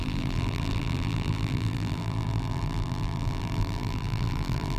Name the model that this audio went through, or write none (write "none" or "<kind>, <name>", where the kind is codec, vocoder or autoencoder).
vocoder, BigVGAN v2